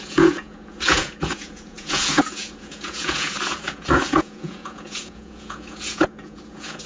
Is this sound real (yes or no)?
no